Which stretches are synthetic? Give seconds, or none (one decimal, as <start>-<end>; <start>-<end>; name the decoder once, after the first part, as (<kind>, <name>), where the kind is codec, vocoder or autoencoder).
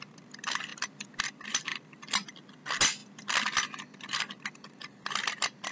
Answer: none